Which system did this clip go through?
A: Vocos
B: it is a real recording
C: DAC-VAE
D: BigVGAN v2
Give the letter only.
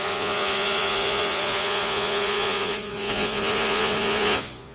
A